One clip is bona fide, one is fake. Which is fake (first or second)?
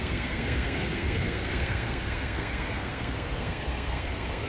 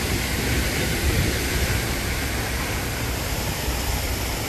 first